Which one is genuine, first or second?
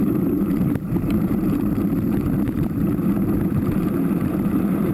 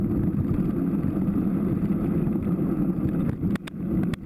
second